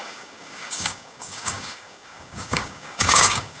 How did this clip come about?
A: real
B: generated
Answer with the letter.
B